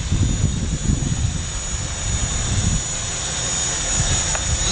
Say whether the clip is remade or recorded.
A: recorded